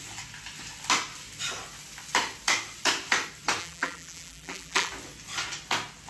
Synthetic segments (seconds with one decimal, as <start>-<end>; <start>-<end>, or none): 3.6-4.9